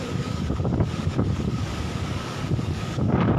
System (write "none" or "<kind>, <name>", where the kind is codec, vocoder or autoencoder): codec, DAC